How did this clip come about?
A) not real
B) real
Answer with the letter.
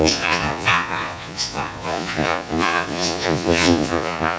A